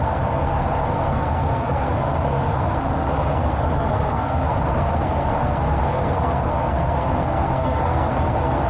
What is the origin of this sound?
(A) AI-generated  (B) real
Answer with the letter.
A